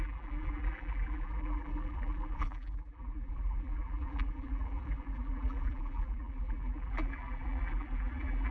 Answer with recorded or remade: remade